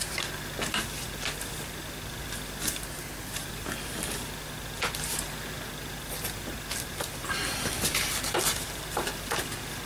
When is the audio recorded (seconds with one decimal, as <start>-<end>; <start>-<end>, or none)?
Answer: 0.0-7.2

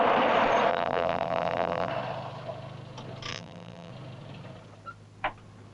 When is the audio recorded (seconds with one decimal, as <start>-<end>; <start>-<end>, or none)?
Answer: 0.0-0.7; 1.9-3.3; 3.9-5.7

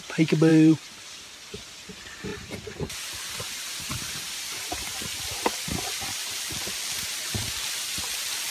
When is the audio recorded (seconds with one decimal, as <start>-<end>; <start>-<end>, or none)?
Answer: 0.0-0.5; 1.6-8.5

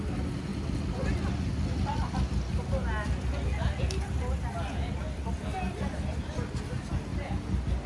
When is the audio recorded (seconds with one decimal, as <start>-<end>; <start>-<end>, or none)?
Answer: 0.5-4.4; 7.1-7.9

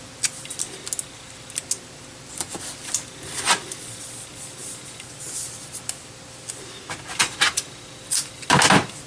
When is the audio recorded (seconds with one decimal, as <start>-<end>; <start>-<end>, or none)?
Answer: 0.0-9.1

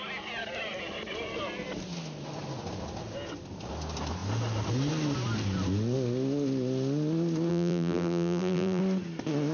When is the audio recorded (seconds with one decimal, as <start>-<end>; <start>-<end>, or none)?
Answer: 0.0-7.5; 8.8-9.5

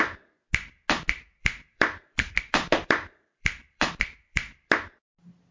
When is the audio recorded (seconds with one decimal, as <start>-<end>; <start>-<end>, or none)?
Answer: 0.0-1.4; 4.7-5.5